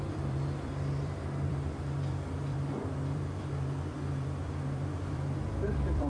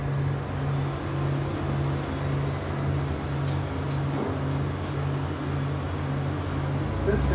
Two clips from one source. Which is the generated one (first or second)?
first